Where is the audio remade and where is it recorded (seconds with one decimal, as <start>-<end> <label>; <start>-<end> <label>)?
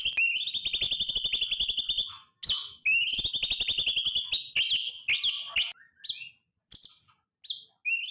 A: 0.0-8.1 recorded